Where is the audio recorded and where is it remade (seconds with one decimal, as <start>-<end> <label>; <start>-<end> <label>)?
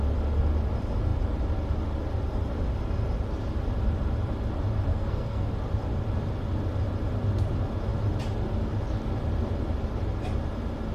0.0-4.9 recorded; 4.9-5.5 remade; 5.5-10.9 recorded